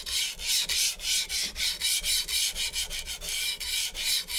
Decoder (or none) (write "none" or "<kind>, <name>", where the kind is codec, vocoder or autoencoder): none